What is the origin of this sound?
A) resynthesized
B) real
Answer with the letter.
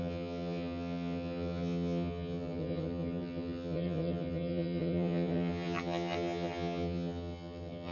A